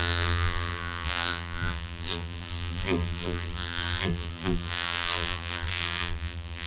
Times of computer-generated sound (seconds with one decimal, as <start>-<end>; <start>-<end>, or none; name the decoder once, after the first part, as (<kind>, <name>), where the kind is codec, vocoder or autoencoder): 0.0-6.7 (vocoder, BigVGAN v2)